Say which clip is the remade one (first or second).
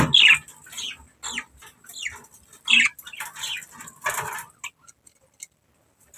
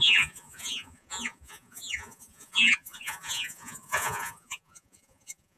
second